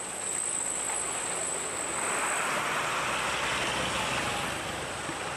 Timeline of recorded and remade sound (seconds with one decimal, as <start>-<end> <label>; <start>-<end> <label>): 0.0-1.4 recorded; 1.4-2.8 remade; 2.8-5.4 recorded